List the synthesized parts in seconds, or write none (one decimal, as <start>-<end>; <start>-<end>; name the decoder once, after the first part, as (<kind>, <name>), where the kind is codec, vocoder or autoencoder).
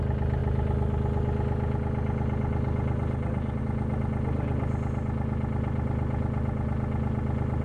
none